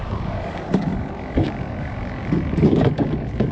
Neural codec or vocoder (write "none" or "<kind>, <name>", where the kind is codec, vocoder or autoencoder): codec, DAC